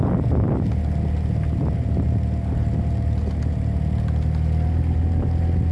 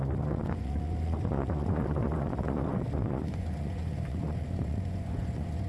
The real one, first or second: first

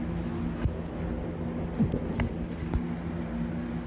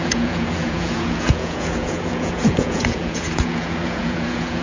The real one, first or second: first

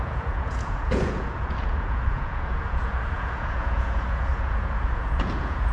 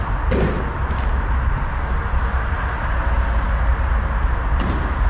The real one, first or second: second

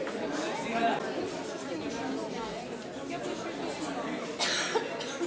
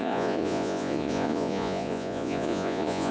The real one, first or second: first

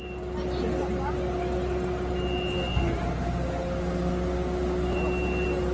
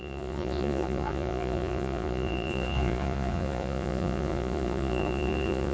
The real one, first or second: first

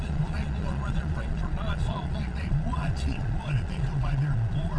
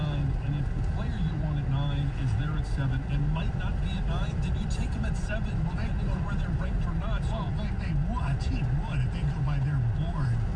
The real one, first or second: second